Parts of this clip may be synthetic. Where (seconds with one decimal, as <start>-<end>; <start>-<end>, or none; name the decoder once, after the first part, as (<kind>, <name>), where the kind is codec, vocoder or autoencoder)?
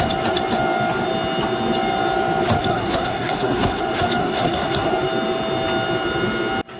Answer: 2.7-3.8 (codec, SNAC); 4.2-4.9